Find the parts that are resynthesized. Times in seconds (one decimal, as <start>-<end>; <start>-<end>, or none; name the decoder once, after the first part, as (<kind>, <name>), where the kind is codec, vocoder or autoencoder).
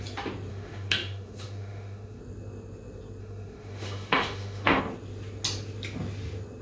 0.5-2.2 (autoencoder, DAC-VAE); 3.2-4.8